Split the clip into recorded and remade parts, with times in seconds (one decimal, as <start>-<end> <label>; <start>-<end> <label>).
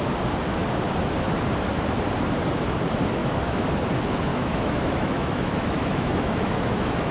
0.0-3.2 recorded; 3.2-3.7 remade; 3.7-4.3 recorded; 4.3-7.1 remade